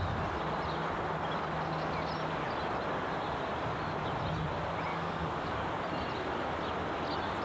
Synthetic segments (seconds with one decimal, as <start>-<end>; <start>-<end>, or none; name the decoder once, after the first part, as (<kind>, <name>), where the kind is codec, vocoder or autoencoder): 4.9-5.7 (codec, DAC)